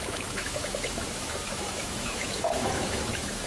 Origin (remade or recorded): remade